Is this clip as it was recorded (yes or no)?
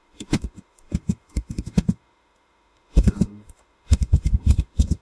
no